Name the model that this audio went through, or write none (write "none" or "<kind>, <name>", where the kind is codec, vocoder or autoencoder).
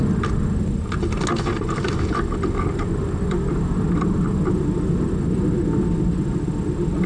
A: none